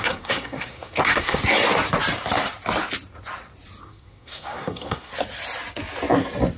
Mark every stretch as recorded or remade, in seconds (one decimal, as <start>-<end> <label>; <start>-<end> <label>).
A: 0.0-1.4 remade; 1.4-3.8 recorded; 3.8-5.1 remade; 5.1-6.6 recorded